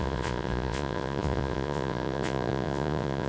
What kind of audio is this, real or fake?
fake